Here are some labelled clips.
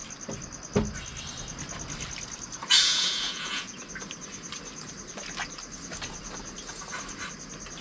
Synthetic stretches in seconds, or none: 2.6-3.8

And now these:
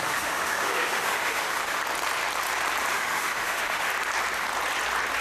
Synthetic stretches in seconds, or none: 0.0-1.8; 2.9-3.9

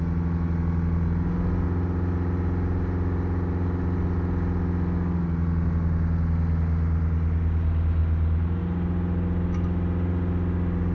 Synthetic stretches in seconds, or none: none

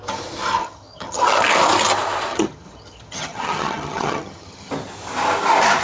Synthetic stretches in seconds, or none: 0.6-1.4; 2.3-4.7

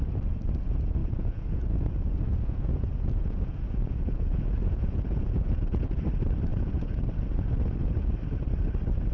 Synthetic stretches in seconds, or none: 1.0-6.0; 6.5-7.0

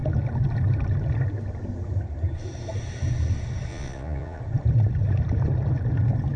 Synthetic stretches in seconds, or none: 3.7-4.4

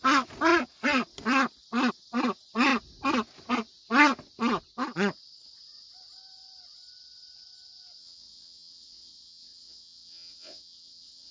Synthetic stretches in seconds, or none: 8.0-11.3

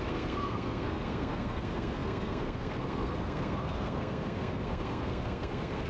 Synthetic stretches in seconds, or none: 0.0-5.9